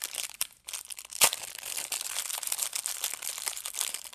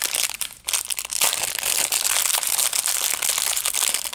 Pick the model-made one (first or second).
first